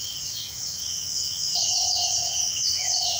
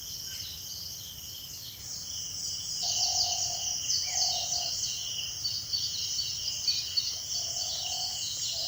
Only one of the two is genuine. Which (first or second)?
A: second